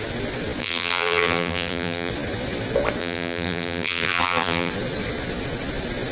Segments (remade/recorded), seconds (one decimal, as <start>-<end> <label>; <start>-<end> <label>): 0.0-0.6 recorded; 0.6-2.1 remade; 2.1-3.0 recorded; 3.0-4.7 remade; 4.7-6.1 recorded